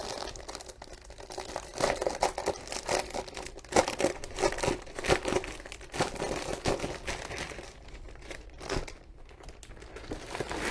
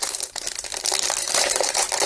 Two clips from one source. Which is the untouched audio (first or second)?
first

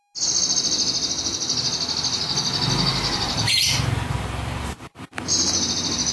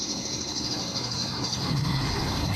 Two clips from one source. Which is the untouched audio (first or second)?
first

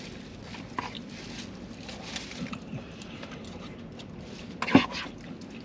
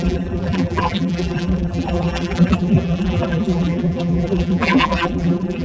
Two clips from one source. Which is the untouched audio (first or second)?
first